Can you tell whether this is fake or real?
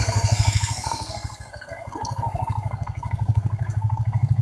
fake